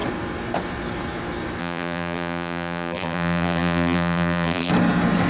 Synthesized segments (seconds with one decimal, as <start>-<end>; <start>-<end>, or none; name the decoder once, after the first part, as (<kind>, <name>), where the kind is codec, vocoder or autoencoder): 1.6-4.7 (vocoder, BigVGAN v2)